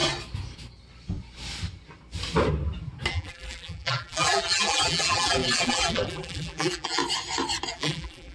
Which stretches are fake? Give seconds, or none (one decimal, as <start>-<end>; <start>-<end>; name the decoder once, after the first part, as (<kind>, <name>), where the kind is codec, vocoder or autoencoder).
3.1-7.0 (vocoder, BigVGAN v2); 7.7-8.3